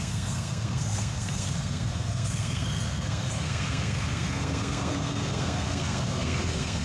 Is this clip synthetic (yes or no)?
yes